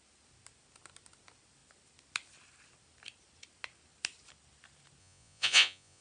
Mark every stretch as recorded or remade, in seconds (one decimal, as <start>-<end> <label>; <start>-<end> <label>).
0.0-5.0 recorded; 5.0-6.0 remade